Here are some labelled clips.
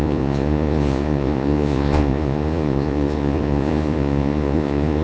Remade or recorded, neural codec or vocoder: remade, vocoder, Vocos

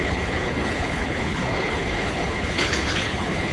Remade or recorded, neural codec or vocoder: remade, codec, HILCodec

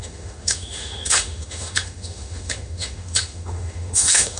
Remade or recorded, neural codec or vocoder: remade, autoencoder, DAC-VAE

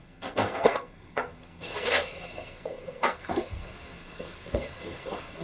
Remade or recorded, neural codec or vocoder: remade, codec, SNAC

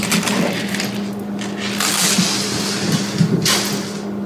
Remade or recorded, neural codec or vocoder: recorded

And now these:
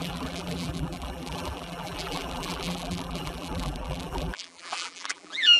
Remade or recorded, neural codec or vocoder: remade, vocoder, BigVGAN v2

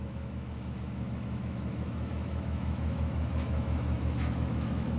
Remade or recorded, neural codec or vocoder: remade, autoencoder, DAC-VAE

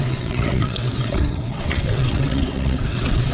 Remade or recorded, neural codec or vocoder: remade, vocoder, WaveNeXt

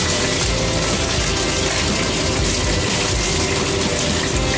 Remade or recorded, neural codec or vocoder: recorded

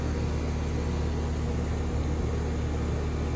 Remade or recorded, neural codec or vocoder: recorded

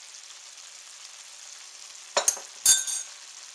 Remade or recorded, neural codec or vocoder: recorded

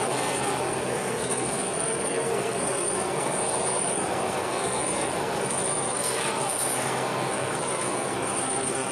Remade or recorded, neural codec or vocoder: remade, codec, SNAC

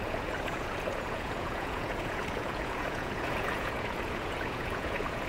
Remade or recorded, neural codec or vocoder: remade, vocoder, Vocos